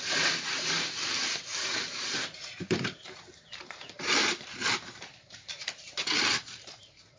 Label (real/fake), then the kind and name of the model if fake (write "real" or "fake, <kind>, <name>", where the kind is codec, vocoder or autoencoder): fake, vocoder, BigVGAN v2